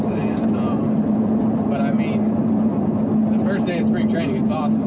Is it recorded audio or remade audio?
recorded